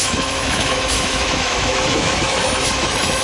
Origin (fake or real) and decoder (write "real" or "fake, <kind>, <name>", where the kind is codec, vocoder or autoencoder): fake, autoencoder, DAC-VAE